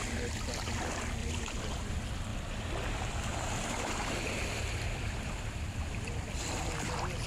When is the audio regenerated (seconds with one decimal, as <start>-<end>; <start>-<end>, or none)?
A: 1.2-1.9; 2.3-6.4